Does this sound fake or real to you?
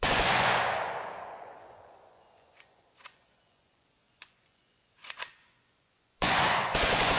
fake